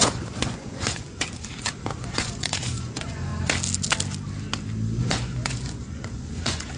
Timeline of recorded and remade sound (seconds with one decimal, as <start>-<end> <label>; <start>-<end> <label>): 0.0-3.3 remade; 3.3-5.0 recorded; 5.0-6.8 remade